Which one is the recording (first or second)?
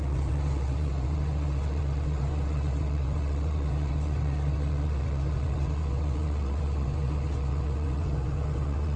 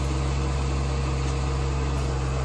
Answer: second